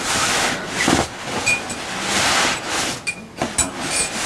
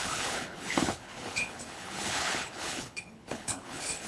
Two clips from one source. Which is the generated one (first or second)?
second